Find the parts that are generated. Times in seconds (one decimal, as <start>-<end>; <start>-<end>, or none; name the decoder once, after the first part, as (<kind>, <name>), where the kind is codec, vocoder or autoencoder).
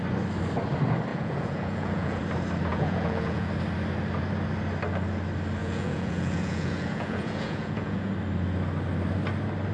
1.1-2.2 (vocoder, Vocos); 2.7-3.5; 5.6-8.1